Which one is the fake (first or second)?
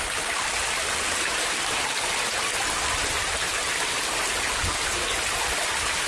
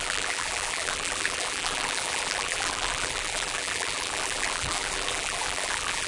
second